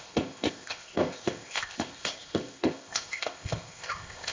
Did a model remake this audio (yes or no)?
yes